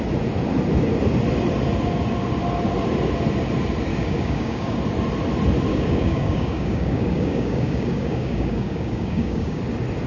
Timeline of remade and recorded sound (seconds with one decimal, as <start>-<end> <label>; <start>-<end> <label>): 0.0-3.9 recorded; 3.9-4.8 remade; 4.8-5.7 recorded; 5.7-9.6 remade; 9.6-10.1 recorded